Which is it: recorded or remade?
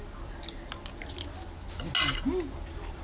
recorded